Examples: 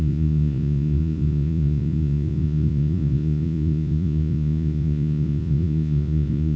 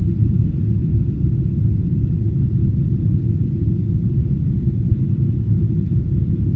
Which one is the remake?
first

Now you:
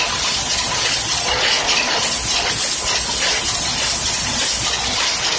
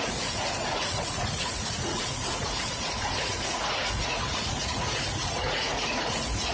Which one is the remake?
second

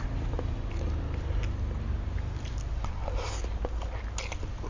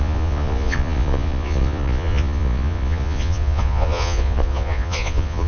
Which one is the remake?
second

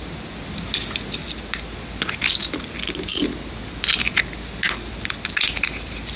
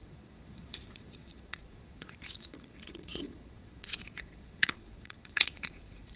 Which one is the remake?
second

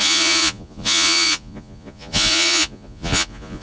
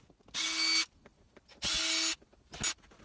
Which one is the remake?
first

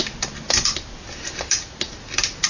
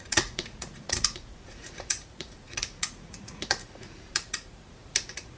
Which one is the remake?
second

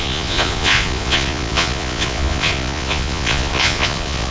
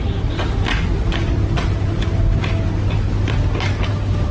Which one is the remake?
first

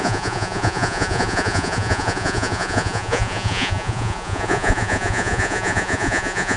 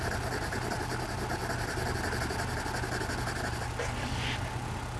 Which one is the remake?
first